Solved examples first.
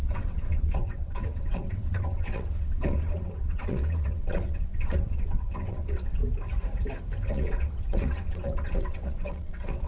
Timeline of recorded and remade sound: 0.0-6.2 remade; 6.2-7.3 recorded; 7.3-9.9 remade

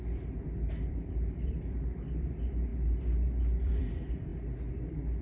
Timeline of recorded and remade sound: 0.0-2.7 remade; 2.7-3.6 recorded; 3.6-4.3 remade; 4.3-5.2 recorded

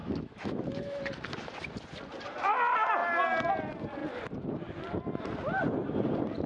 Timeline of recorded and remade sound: 0.0-1.0 remade; 1.0-6.5 recorded

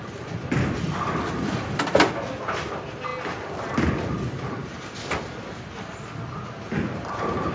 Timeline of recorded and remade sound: 0.0-7.5 recorded

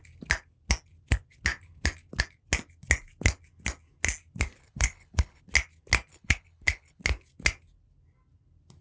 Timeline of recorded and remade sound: 0.0-4.6 recorded; 4.6-5.4 remade; 5.4-6.1 recorded; 6.1-7.0 remade; 7.0-8.8 recorded